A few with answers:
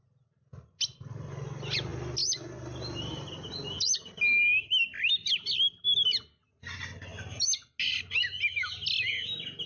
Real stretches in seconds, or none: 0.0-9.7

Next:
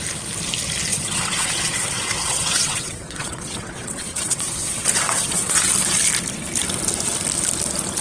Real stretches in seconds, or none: 0.0-0.9; 5.7-8.0

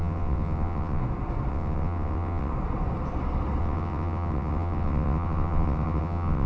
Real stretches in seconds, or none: 1.0-1.5; 2.5-3.6

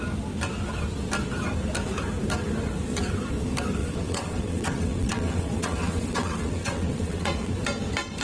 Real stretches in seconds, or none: 0.0-3.8; 7.5-8.2

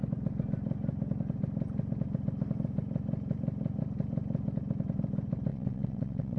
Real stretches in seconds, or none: 0.0-5.5